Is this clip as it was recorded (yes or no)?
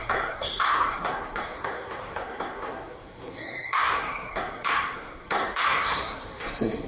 no